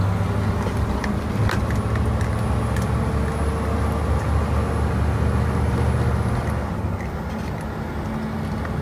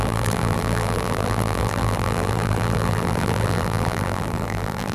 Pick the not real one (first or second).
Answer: second